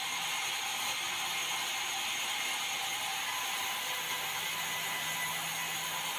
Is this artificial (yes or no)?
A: no